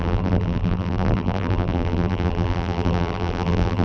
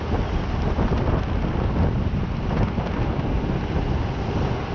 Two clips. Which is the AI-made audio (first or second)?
first